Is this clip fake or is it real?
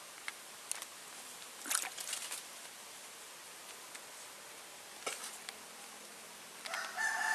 real